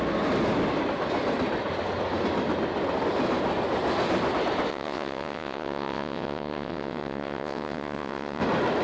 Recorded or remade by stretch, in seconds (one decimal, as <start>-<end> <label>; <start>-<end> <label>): 0.0-4.7 recorded; 4.7-8.4 remade; 8.4-8.8 recorded